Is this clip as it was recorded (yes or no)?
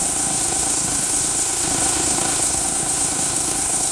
no